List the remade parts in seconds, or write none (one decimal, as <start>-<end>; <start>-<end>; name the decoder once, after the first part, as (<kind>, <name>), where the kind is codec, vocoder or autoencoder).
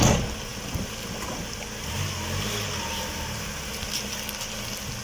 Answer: none